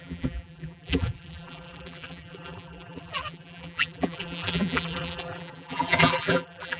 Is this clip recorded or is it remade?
remade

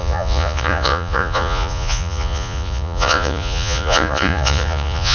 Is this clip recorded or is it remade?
remade